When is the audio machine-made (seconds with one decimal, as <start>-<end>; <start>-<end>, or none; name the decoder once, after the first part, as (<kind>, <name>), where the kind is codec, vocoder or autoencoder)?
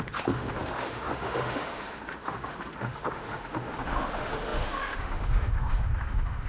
0.0-6.5 (autoencoder, DAC-VAE)